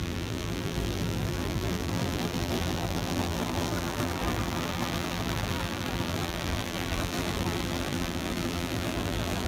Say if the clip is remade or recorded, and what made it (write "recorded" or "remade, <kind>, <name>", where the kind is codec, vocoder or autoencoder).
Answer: remade, vocoder, BigVGAN v2